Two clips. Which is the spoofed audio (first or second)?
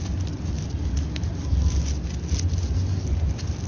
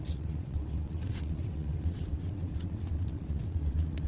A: second